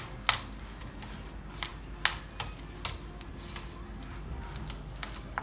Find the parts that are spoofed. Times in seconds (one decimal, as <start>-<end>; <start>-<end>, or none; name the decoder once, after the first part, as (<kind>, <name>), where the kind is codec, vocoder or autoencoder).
none